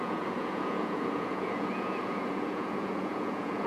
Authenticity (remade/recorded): remade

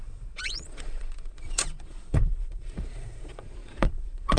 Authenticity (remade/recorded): remade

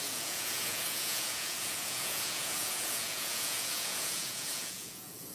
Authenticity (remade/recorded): remade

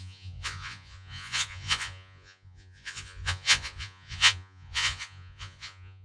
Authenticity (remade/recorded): remade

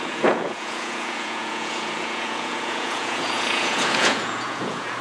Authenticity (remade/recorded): remade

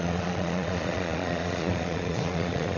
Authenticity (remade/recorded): remade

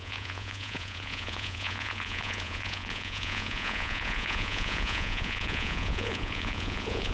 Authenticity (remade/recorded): remade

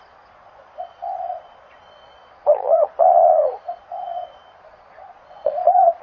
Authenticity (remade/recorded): remade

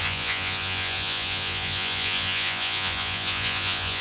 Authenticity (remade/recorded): remade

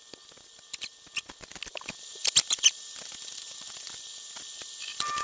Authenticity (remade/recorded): recorded